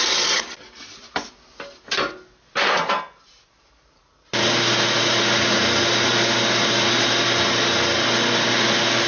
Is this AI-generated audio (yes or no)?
no